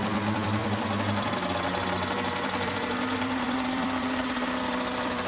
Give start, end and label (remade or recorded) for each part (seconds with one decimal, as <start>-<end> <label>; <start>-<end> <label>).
0.0-5.3 remade